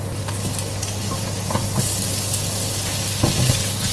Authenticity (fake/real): real